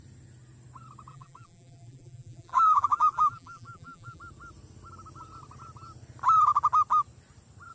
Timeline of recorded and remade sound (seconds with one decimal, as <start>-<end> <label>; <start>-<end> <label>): 0.0-1.1 recorded; 1.1-4.2 remade; 4.2-7.7 recorded